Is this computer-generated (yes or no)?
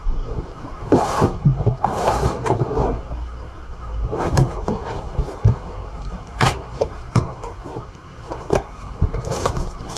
yes